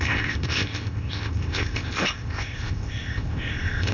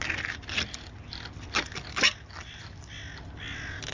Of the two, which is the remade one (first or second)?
first